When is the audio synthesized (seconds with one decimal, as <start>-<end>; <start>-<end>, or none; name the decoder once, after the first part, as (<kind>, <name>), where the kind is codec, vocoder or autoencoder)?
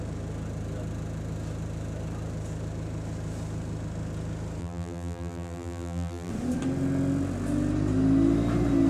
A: 4.6-6.3 (vocoder, BigVGAN v2)